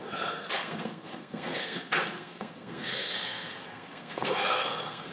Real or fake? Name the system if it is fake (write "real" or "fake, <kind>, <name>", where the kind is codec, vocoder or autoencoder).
fake, codec, SNAC